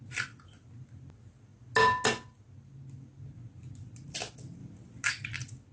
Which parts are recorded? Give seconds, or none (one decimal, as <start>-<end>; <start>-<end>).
0.0-5.7